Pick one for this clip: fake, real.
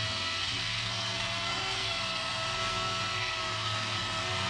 fake